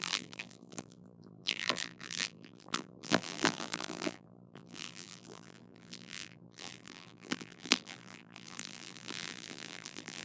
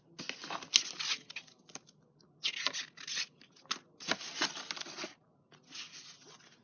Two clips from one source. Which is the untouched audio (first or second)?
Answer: second